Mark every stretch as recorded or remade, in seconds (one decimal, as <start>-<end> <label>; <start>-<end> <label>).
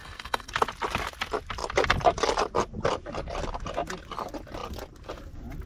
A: 0.0-0.5 remade; 0.5-5.7 recorded